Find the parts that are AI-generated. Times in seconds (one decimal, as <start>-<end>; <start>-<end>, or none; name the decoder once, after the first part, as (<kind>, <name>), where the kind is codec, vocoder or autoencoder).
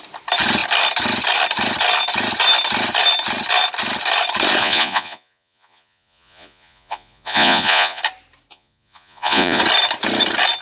4.6-8.0 (vocoder, Vocos); 8.5-9.6